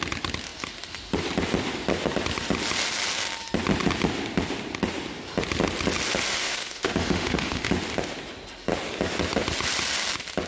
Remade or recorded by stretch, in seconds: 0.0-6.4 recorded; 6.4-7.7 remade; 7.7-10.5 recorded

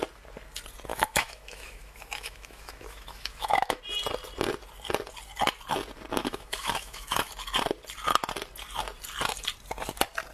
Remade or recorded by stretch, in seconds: 0.0-0.9 recorded; 0.9-3.8 remade; 3.8-6.2 recorded; 6.2-7.3 remade; 7.3-10.3 recorded

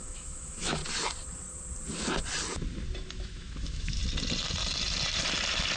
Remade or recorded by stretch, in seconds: 0.0-0.8 remade; 0.8-3.2 recorded; 3.2-4.0 remade; 4.0-5.8 recorded

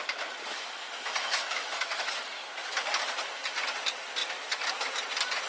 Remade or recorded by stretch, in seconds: 0.0-0.5 recorded; 0.5-2.1 remade; 2.1-5.5 recorded

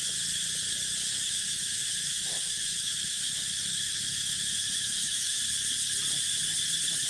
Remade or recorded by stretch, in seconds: 0.0-1.1 recorded; 1.1-5.4 remade; 5.4-7.1 recorded

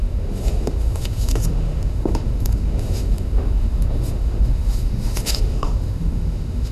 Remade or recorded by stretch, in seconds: 0.0-6.7 remade

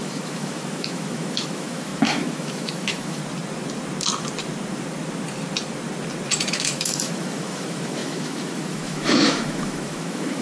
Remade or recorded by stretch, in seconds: 0.0-3.2 remade; 3.2-6.5 recorded; 6.5-10.4 remade

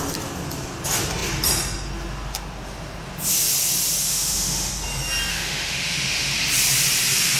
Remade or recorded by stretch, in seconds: 0.0-4.1 recorded; 4.1-4.7 remade; 4.7-5.3 recorded; 5.3-6.3 remade; 6.3-7.4 recorded